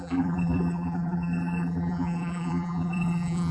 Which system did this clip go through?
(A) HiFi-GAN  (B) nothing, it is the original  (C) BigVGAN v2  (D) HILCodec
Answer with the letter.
C